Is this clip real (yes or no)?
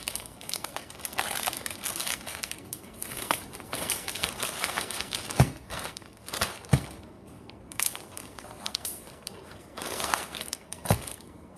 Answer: no